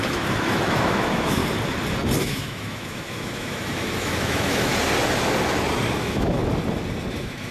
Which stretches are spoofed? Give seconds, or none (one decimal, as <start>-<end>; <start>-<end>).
0.0-1.4; 2.2-4.7; 6.0-6.4; 7.1-7.5